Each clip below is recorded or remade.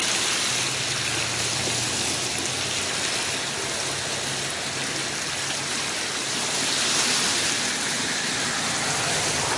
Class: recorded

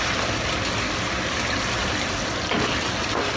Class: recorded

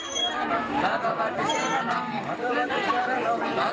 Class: remade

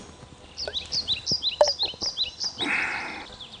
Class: recorded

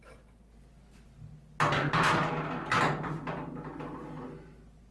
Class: recorded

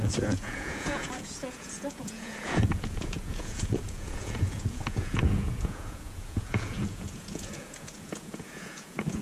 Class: remade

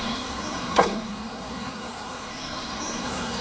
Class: remade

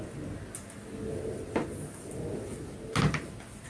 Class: recorded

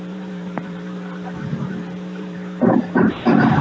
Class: remade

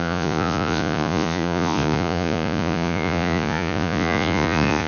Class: remade